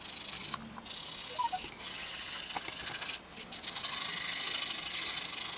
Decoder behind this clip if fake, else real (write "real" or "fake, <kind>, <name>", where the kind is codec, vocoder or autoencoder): real